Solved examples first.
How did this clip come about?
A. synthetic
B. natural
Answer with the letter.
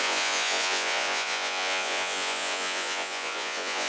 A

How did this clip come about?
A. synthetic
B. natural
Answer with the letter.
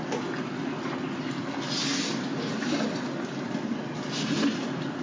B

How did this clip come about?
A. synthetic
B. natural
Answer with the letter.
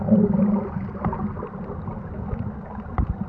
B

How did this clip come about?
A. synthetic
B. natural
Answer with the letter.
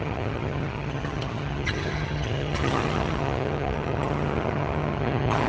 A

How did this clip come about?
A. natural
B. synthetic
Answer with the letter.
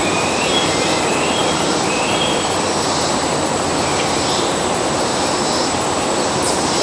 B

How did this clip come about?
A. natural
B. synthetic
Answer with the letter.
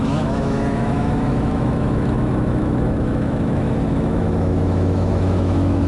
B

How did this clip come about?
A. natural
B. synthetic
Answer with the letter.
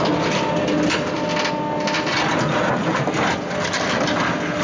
A